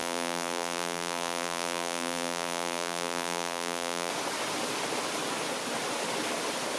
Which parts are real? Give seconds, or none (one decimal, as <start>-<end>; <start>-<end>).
4.1-6.8